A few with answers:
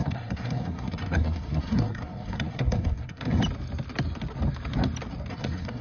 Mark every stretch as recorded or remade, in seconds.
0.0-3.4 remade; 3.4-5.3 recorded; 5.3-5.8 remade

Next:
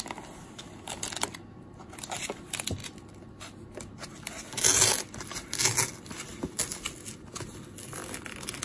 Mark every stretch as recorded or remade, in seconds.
0.0-8.6 recorded

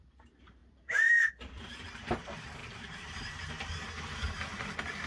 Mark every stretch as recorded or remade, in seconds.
0.0-0.6 recorded; 0.6-1.3 remade; 1.3-2.6 recorded; 2.6-3.9 remade; 3.9-5.1 recorded